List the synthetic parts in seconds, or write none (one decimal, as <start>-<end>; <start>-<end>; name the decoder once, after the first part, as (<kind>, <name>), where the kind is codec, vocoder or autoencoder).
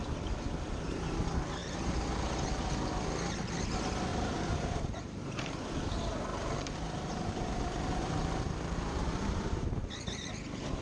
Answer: 1.6-2.7 (vocoder, BigVGAN v2); 4.1-5.6; 6.3-9.7